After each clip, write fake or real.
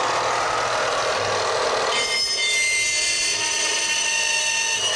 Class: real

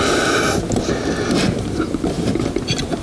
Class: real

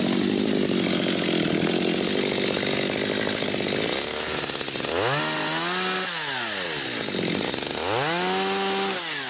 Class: real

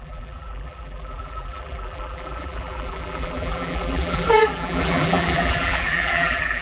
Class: fake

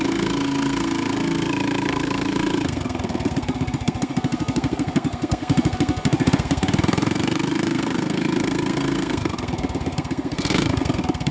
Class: fake